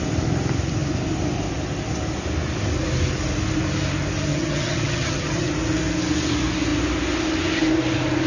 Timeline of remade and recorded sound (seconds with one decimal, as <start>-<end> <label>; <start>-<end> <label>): 0.0-4.3 recorded; 4.3-5.5 remade; 5.5-8.3 recorded